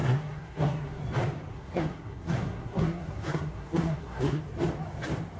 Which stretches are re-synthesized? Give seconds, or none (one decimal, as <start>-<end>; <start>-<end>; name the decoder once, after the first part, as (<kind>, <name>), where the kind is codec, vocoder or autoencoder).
0.0-1.0 (codec, SNAC); 1.5-4.4